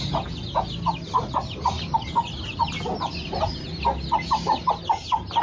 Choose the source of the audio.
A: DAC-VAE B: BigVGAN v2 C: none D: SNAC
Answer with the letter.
C